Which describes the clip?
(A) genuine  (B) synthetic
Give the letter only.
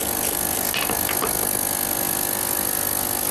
A